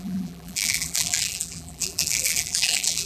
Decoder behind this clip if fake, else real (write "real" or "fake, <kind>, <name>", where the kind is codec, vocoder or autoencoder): fake, vocoder, BigVGAN v2